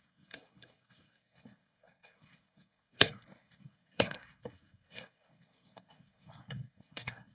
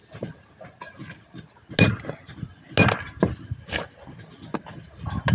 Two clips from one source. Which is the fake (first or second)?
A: first